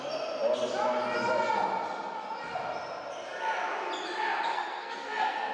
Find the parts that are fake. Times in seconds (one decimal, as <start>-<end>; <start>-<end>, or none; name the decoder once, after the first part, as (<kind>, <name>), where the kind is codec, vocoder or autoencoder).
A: 4.5-5.5 (codec, SNAC)